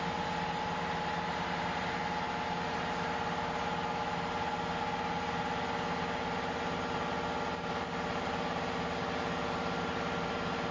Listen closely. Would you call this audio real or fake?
real